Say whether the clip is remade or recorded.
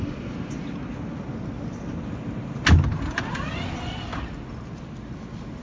recorded